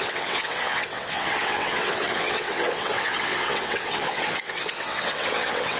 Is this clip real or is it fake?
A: fake